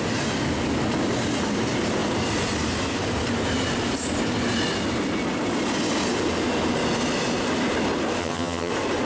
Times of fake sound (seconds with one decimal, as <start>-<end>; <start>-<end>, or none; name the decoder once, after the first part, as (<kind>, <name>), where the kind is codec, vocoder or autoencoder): 8.2-8.7 (vocoder, HiFi-GAN)